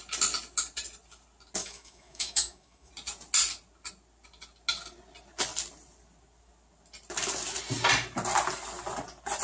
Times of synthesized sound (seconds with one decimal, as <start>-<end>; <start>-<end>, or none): 1.6-2.9